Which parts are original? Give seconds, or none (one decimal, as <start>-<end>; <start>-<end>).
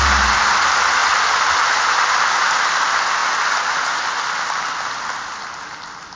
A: 0.0-6.2